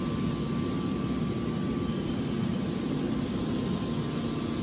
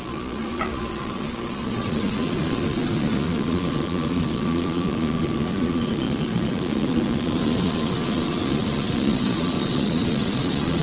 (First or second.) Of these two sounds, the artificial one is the second